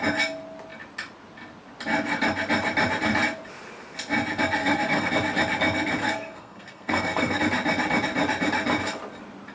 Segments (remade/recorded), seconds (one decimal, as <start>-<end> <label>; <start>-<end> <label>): 0.0-4.6 recorded; 4.6-5.1 remade; 5.1-6.0 recorded; 6.0-7.4 remade; 7.4-9.5 recorded